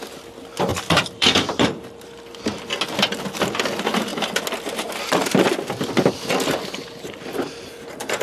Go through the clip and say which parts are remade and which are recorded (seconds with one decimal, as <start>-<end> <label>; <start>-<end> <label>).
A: 0.0-0.7 recorded; 0.7-2.0 remade; 2.0-8.2 recorded